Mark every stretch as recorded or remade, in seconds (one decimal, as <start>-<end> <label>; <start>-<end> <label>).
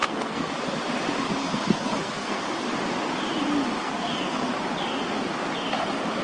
0.0-0.5 remade; 0.5-1.4 recorded; 1.4-2.4 remade; 2.4-3.8 recorded; 3.8-4.5 remade; 4.5-6.2 recorded